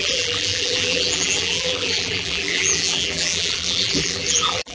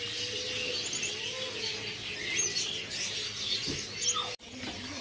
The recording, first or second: second